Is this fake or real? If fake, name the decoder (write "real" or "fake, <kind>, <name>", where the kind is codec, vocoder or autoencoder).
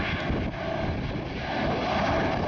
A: real